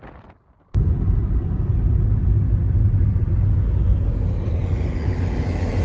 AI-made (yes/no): no